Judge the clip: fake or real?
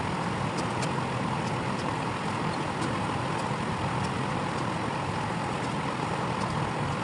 real